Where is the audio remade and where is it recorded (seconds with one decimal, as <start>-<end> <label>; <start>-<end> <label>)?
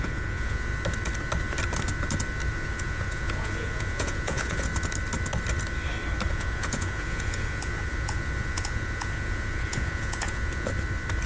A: 0.0-0.7 remade; 0.7-2.5 recorded; 2.5-4.7 remade; 4.7-6.3 recorded; 6.3-10.7 remade; 10.7-11.3 recorded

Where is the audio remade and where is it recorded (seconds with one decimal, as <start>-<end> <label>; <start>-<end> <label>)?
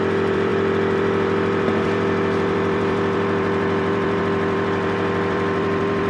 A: 0.0-6.1 remade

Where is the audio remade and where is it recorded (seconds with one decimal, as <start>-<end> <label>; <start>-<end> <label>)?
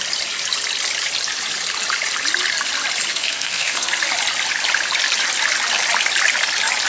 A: 0.0-3.1 recorded; 3.1-3.9 remade; 3.9-6.9 recorded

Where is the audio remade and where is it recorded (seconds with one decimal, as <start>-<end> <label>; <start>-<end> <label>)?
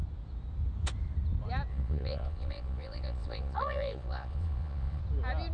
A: 0.0-1.7 recorded; 1.7-5.0 remade; 5.0-5.5 recorded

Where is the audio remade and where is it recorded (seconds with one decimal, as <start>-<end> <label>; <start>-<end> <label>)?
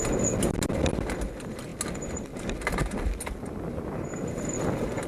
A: 0.0-5.1 recorded